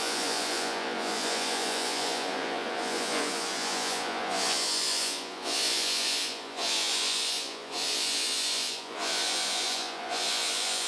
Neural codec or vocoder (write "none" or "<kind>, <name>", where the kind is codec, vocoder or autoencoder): vocoder, Vocos